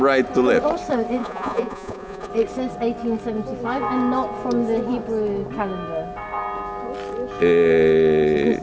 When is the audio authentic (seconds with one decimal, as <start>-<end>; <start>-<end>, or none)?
0.0-1.2; 2.3-8.6